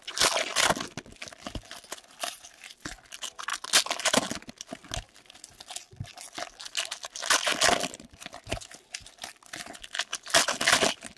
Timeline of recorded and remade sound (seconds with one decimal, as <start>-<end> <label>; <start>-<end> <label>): 0.0-11.2 recorded